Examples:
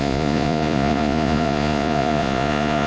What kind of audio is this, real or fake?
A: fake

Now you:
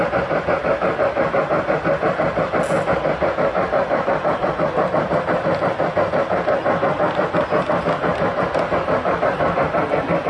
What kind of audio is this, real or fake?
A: real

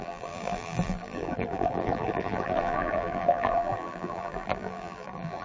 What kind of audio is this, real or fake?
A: fake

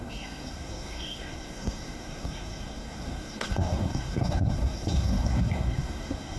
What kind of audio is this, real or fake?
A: fake